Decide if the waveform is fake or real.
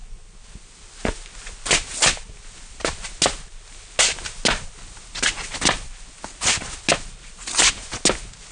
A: real